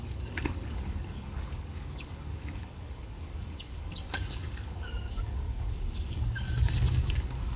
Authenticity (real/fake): fake